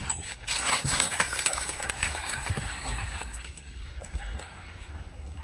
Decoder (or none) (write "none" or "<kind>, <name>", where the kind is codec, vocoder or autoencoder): codec, SNAC